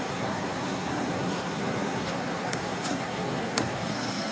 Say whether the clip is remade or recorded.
remade